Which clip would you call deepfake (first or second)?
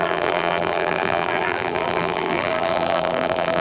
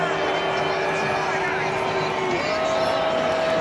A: first